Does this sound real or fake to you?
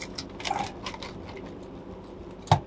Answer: real